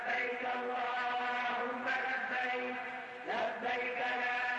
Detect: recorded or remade recorded